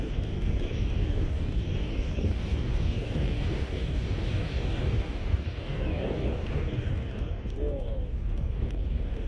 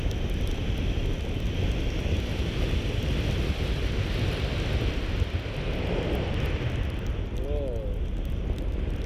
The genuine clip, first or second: second